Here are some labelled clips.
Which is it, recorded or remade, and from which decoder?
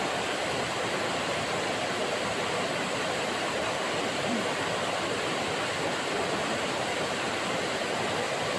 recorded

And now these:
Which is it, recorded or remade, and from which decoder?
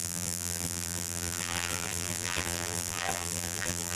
remade, vocoder, BigVGAN v2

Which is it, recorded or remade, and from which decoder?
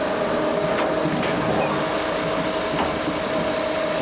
recorded